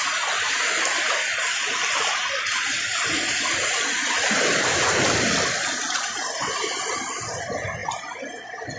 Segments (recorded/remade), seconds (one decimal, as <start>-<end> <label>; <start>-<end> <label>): 0.0-8.8 recorded